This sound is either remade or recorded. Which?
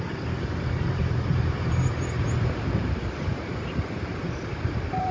remade